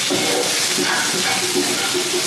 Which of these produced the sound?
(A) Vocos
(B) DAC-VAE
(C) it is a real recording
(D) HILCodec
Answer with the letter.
C